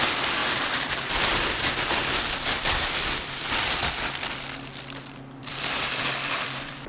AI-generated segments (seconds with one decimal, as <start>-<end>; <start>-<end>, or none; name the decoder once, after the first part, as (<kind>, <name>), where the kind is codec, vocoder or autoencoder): 0.4-3.8 (vocoder, BigVGAN v2); 5.4-6.9